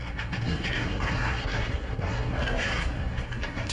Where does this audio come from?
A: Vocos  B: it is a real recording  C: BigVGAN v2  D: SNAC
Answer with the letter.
D